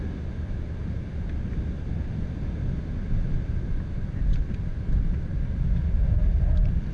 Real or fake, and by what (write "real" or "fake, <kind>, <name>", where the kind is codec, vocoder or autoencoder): real